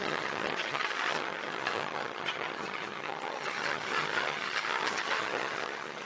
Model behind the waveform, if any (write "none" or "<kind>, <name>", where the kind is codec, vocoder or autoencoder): vocoder, HiFi-GAN